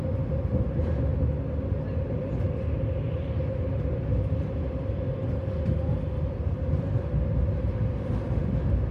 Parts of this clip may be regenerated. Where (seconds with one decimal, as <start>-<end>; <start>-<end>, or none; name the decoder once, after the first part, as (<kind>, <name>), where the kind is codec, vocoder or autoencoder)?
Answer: none